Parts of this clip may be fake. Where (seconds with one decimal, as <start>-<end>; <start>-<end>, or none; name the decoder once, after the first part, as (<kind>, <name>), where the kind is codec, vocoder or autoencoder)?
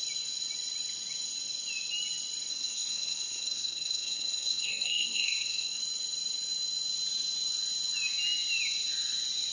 2.5-5.8 (codec, SNAC)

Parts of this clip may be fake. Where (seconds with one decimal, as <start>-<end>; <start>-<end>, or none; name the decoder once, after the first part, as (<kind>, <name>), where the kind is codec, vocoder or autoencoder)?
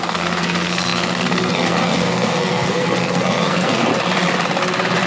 0.0-3.9 (codec, SNAC)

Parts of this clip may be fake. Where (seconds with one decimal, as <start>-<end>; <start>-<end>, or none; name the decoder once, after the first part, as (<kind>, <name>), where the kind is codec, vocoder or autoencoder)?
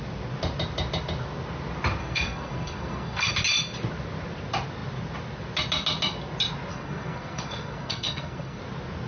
2.0-3.3 (codec, SNAC); 6.7-8.6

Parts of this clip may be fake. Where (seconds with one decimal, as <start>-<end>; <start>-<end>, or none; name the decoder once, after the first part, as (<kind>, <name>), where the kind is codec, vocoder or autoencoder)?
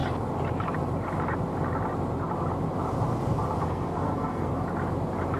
3.6-4.5 (codec, SNAC)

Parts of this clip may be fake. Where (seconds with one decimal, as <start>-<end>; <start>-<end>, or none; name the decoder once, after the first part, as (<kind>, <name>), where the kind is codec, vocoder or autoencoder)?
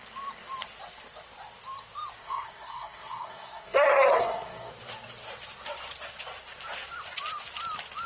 2.2-4.7 (codec, SNAC)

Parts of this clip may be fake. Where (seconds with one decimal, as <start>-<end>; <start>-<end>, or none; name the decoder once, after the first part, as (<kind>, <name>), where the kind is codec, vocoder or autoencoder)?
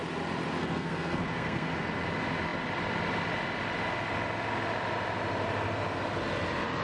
0.6-1.7 (codec, SNAC)